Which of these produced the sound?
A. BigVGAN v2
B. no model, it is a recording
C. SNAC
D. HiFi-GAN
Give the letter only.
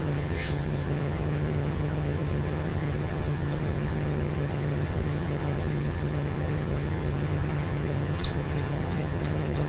D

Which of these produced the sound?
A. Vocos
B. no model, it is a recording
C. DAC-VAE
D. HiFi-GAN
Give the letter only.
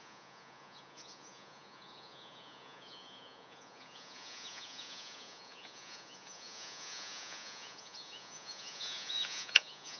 A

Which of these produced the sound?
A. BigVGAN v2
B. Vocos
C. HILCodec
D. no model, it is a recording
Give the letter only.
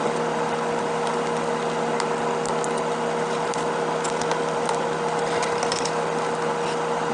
D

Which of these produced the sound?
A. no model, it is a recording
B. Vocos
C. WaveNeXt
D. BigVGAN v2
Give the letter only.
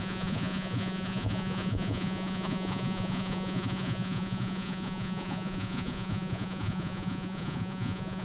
B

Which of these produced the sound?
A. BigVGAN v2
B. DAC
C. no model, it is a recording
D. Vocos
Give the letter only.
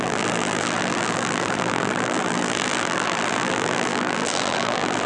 A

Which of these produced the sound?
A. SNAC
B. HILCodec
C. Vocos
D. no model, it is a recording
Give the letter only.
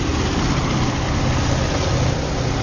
D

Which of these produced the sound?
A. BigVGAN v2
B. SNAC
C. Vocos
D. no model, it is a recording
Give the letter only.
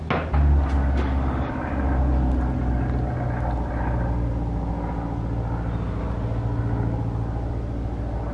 D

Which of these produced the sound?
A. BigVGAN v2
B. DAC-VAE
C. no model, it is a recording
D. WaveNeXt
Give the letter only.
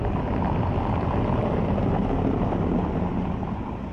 C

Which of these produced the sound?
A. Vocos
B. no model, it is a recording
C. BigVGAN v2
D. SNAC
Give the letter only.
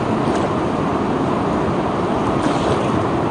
B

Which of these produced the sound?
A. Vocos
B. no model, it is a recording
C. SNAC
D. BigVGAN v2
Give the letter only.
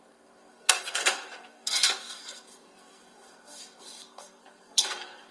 C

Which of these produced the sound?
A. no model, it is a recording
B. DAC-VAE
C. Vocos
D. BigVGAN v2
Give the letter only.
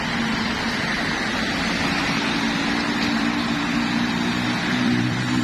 D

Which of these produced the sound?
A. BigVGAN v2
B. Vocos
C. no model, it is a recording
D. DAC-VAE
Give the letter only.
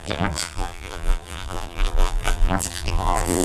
A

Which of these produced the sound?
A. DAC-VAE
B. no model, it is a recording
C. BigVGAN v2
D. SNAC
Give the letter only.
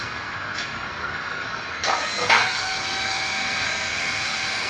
D